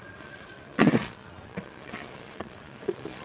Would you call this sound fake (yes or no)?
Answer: yes